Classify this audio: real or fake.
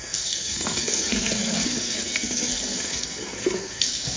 fake